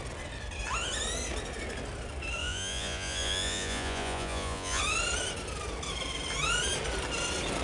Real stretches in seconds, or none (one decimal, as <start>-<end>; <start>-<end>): 0.0-2.4; 4.8-7.6